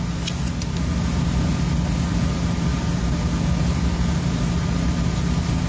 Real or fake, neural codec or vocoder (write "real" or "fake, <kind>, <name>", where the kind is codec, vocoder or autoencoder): real